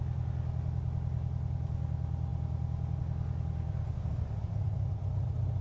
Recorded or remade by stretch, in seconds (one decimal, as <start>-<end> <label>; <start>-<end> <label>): 0.0-5.6 recorded